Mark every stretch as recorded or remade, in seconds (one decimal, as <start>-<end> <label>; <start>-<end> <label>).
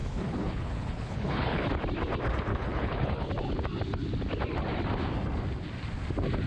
0.0-1.7 remade; 1.7-2.5 recorded; 2.5-3.3 remade; 3.3-6.5 recorded